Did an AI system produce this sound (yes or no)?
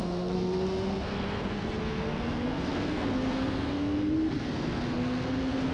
yes